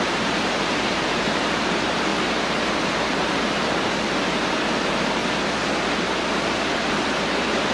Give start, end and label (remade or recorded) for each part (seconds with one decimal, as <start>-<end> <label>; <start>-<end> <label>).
0.0-5.2 remade; 5.2-7.7 recorded